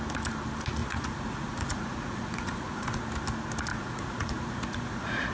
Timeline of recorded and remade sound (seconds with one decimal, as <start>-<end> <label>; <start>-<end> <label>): 0.0-0.8 recorded; 0.8-3.0 remade; 3.0-3.7 recorded; 3.7-5.3 remade